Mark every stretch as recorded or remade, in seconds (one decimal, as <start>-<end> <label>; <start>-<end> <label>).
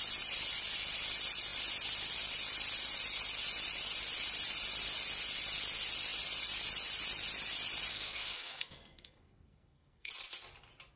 0.0-7.9 recorded; 7.9-10.1 remade; 10.1-11.0 recorded